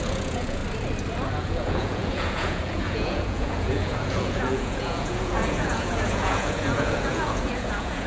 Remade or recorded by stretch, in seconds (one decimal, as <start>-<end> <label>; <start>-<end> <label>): 0.0-0.6 remade; 0.6-1.3 recorded; 1.3-8.1 remade